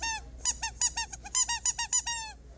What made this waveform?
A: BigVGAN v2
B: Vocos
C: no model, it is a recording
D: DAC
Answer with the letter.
C